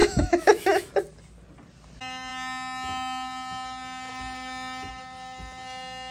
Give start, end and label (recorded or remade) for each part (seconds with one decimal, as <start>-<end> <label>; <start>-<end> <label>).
0.0-0.9 remade; 0.9-6.1 recorded